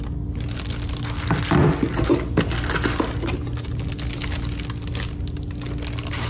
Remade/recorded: recorded